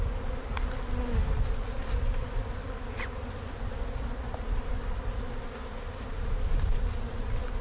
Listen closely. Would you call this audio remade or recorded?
recorded